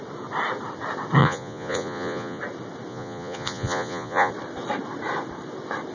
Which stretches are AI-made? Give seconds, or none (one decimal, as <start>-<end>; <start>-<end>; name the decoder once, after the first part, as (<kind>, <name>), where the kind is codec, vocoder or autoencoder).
1.2-2.4 (vocoder, Vocos); 2.9-4.3